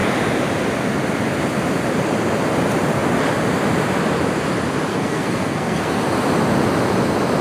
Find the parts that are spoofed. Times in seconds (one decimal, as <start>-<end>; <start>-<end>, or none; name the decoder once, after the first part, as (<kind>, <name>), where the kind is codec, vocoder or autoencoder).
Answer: 4.9-6.0 (codec, SNAC)